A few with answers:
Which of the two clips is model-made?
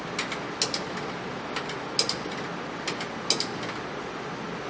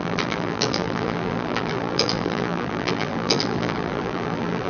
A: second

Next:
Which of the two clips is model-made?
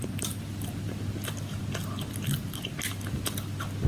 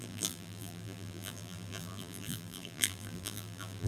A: second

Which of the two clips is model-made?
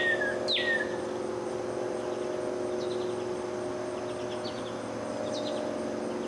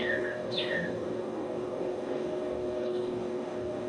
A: second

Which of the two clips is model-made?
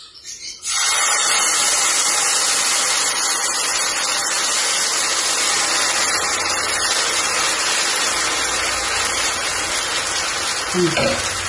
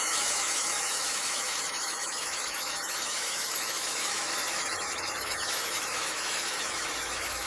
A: second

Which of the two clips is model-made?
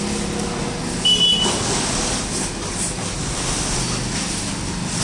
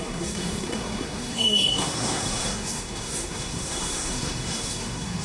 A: second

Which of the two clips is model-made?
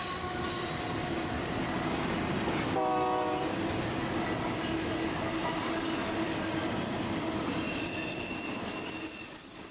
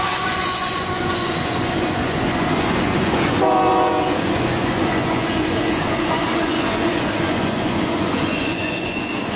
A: second